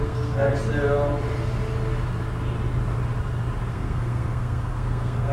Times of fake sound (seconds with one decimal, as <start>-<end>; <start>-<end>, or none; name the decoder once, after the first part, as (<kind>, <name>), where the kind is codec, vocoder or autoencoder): 0.0-0.5 (codec, SNAC); 3.7-5.3

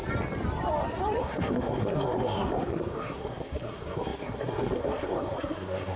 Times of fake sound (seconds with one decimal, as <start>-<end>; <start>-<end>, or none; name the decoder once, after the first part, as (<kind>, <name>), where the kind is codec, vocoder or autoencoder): 1.2-6.0 (codec, SNAC)

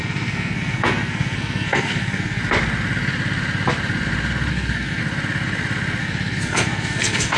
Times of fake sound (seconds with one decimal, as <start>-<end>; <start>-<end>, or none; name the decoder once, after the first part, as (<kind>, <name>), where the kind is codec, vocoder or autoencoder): 0.0-2.4 (codec, SNAC); 4.5-5.0; 6.0-7.4